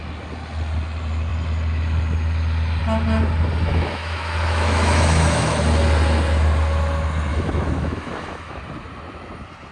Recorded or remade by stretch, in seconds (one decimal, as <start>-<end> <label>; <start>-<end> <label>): 0.0-3.7 recorded; 3.7-5.5 remade; 5.5-7.3 recorded; 7.3-8.6 remade; 8.6-9.7 recorded